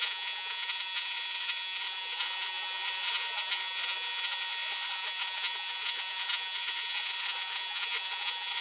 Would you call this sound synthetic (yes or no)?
yes